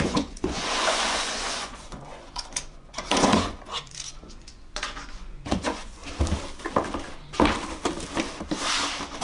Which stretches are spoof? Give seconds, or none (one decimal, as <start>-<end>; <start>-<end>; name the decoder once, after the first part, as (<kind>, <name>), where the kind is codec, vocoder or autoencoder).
0.0-6.0 (vocoder, Vocos)